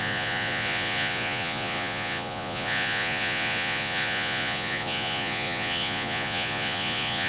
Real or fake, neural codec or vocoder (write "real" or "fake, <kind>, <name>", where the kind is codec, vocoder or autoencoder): fake, vocoder, Vocos